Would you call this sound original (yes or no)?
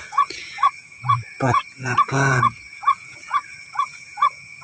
no